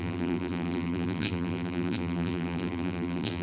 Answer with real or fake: fake